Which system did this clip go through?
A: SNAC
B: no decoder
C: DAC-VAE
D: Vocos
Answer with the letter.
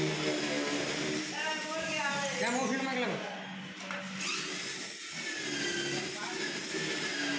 B